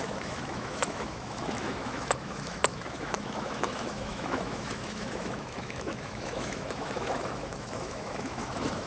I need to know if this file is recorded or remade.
remade